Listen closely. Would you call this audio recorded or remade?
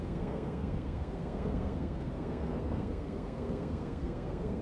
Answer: remade